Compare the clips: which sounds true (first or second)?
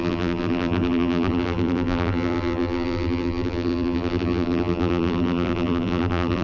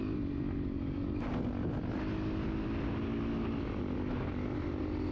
second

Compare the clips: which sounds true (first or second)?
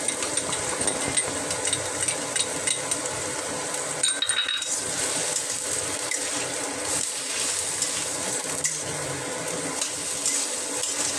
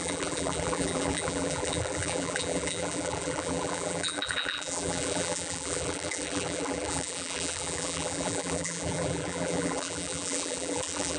first